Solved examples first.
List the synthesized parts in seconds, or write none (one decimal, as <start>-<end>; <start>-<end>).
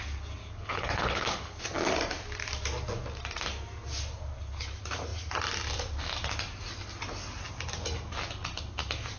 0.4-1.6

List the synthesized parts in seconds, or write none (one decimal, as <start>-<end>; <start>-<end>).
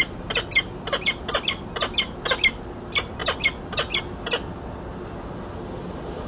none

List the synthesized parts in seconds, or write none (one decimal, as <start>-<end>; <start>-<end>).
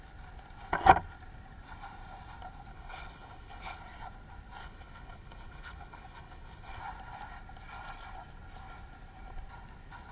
2.7-3.8; 4.6-6.8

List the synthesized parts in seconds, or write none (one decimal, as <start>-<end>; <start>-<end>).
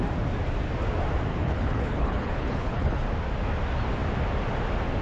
1.3-3.0